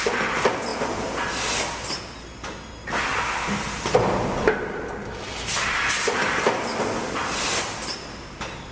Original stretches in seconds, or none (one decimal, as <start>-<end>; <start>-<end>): 0.0-8.7

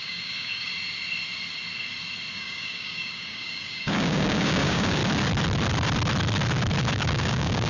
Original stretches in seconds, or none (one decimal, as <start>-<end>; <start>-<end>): 0.7-2.3; 5.0-6.8

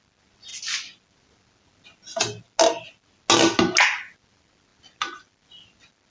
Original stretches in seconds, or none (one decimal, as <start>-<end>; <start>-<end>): 0.0-6.1

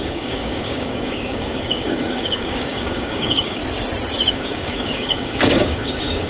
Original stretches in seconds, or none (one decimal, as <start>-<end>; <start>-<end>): 3.6-4.3

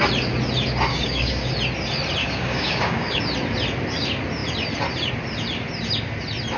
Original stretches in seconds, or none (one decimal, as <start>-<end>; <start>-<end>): 0.0-0.9; 1.5-2.2; 3.2-6.6